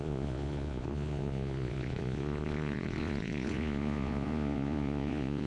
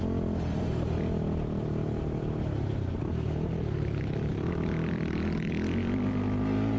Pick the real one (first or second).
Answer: second